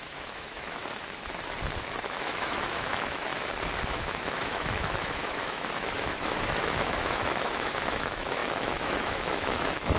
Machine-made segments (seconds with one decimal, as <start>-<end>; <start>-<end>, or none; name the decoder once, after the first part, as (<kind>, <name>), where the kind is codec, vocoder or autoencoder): 0.0-0.8 (autoencoder, DAC-VAE); 2.0-3.3; 3.9-10.0